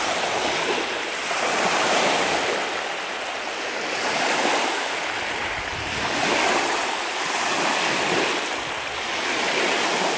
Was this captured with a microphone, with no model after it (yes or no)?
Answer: yes